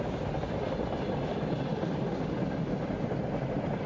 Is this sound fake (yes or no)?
no